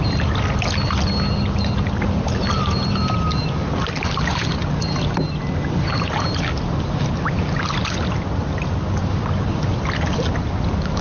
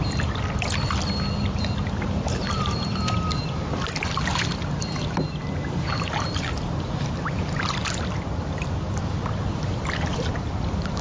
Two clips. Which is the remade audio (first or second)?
second